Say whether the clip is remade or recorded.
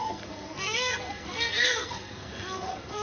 remade